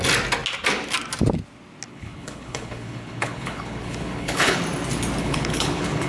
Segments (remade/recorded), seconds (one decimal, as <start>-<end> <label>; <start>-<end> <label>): 0.0-1.9 recorded; 1.9-4.6 remade; 4.6-5.2 recorded; 5.2-6.1 remade